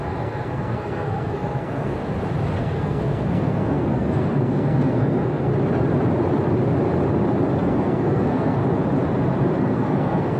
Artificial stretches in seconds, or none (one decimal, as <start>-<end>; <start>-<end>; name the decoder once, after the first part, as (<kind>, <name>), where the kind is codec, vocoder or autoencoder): 0.0-2.0 (codec, SNAC); 2.6-5.5; 7.6-8.6; 9.6-10.4